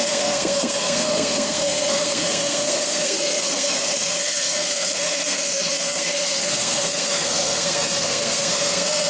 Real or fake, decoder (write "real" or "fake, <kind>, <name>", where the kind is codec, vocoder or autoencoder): fake, codec, SNAC